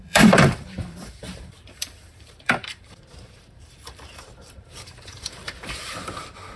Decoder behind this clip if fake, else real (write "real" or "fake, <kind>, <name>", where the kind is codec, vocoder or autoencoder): fake, vocoder, BigVGAN v2